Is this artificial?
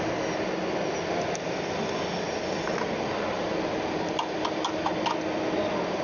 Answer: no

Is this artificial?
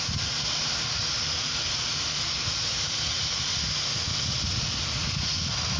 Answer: no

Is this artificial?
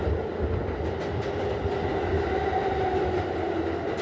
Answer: no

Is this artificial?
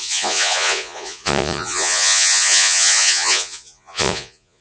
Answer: yes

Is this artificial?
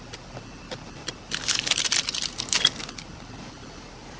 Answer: no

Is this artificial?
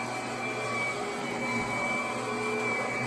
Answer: no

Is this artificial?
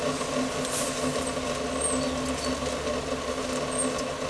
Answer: no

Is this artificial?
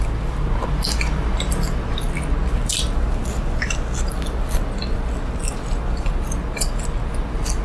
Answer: no